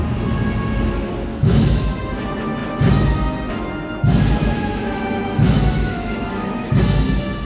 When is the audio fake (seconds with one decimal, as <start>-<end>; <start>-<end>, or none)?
1.3-2.0; 4.4-6.7